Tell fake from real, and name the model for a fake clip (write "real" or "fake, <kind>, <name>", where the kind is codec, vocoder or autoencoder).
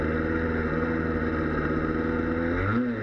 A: real